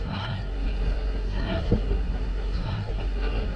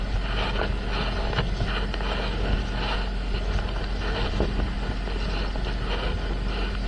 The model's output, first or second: first